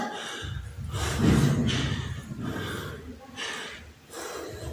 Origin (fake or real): real